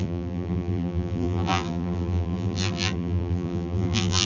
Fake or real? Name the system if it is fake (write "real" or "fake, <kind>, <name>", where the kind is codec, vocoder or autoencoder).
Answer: fake, vocoder, BigVGAN v2